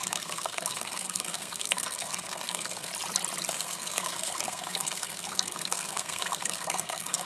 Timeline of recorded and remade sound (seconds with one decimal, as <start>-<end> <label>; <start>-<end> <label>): 0.0-2.9 remade; 2.9-3.5 recorded; 3.5-7.3 remade